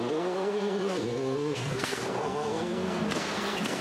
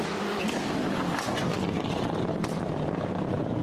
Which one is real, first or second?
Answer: second